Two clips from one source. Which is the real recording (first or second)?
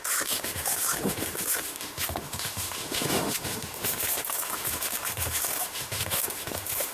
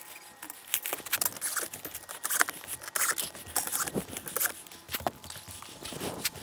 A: second